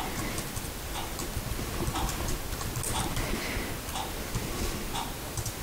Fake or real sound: real